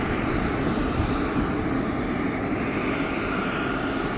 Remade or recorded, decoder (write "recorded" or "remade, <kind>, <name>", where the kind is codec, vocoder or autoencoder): recorded